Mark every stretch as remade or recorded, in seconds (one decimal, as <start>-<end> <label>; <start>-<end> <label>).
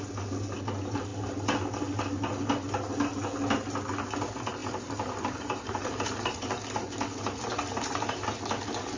0.0-4.6 recorded; 4.6-8.4 remade; 8.4-9.0 recorded